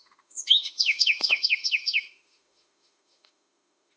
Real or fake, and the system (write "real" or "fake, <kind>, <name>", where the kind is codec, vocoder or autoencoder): fake, autoencoder, DAC-VAE